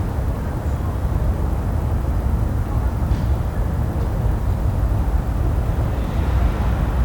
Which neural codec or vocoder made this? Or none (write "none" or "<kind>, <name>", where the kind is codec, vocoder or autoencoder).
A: none